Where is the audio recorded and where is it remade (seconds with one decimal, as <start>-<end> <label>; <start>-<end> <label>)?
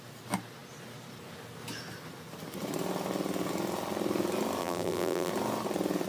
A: 0.0-4.6 recorded; 4.6-5.3 remade; 5.3-6.1 recorded